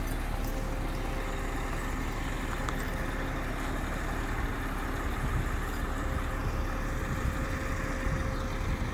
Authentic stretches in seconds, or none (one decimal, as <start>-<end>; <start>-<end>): 0.0-6.4; 7.7-8.9